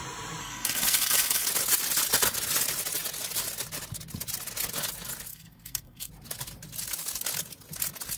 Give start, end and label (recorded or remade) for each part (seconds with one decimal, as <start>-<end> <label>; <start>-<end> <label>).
0.0-0.4 recorded; 0.4-1.5 remade; 1.5-5.3 recorded; 5.3-6.1 remade; 6.1-8.2 recorded